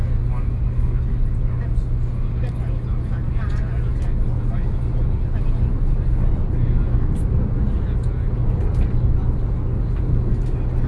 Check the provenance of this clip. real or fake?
real